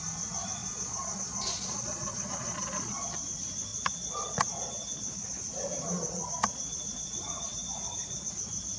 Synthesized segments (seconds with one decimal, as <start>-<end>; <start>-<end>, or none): 0.6-3.1; 3.7-8.3